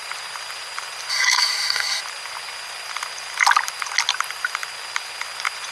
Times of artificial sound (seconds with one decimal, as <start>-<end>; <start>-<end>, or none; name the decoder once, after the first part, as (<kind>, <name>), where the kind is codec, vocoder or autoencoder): 1.1-2.0 (codec, SNAC)